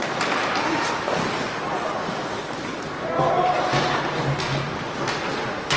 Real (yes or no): yes